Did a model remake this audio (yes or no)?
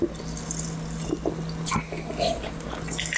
no